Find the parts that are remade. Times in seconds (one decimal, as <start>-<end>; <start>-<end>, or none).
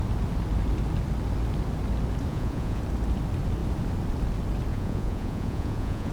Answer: 2.3-2.8; 4.7-6.1